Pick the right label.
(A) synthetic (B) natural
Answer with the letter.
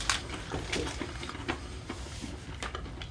B